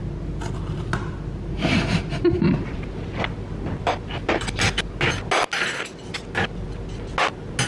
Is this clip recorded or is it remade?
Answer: recorded